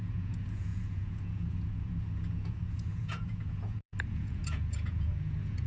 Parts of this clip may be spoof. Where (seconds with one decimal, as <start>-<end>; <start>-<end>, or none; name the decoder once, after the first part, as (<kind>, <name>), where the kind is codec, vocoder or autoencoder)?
0.0-5.7 (vocoder, Vocos)

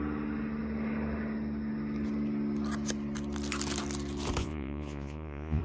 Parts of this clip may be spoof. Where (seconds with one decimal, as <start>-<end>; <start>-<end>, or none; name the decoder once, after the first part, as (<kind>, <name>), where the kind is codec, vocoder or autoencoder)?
4.4-5.6 (vocoder, Vocos)

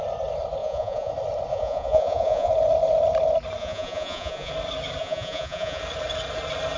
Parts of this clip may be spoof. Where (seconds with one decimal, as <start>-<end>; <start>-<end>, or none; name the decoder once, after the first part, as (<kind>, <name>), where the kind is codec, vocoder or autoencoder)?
0.6-1.1 (vocoder, Vocos); 1.5-2.5; 3.6-4.5; 5.0-5.8

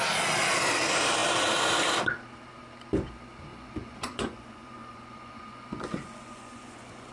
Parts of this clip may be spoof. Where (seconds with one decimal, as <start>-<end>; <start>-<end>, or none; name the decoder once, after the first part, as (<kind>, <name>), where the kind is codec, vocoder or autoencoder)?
3.5-7.1 (vocoder, Vocos)

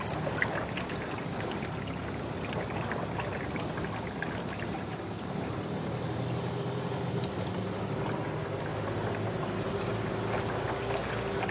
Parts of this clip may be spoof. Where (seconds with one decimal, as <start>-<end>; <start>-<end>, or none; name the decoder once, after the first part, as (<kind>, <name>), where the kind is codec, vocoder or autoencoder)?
none